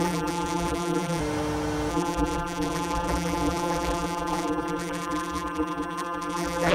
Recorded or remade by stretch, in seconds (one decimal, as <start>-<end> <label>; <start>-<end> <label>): 0.0-1.2 remade; 1.2-1.9 recorded; 1.9-6.7 remade